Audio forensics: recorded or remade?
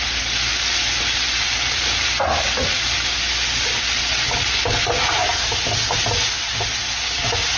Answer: recorded